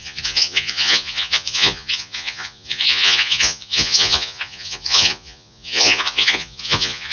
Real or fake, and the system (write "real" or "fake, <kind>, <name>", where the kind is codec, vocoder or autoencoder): fake, vocoder, Vocos